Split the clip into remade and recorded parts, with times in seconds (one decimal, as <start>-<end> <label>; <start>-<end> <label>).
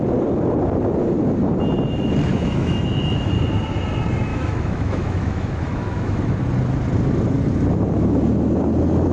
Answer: 0.0-2.3 recorded; 2.3-3.3 remade; 3.3-4.3 recorded; 4.3-6.2 remade; 6.2-9.1 recorded